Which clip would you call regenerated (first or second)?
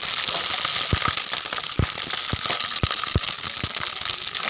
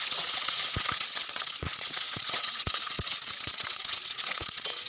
second